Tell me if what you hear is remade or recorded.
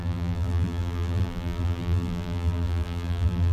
remade